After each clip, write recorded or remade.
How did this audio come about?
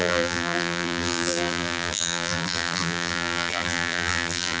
remade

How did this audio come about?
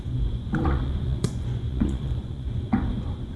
remade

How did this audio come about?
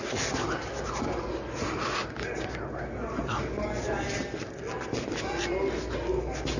recorded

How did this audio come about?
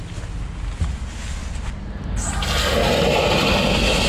recorded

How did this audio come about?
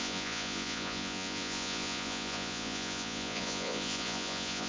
remade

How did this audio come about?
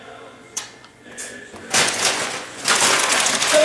remade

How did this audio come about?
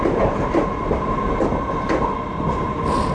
recorded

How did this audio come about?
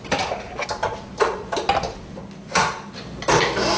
recorded